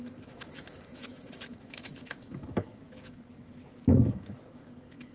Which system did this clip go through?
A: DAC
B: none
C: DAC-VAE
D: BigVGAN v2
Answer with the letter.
C